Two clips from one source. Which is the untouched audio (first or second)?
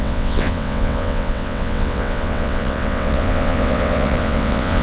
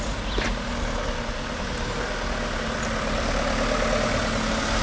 second